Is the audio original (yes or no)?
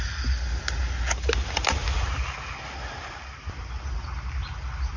yes